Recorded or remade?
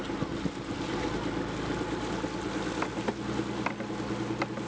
recorded